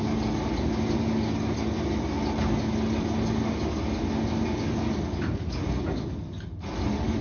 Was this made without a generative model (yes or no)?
yes